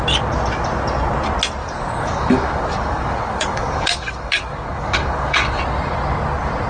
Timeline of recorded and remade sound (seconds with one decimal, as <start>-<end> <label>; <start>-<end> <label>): 0.0-1.6 recorded; 1.6-5.6 remade; 5.6-6.7 recorded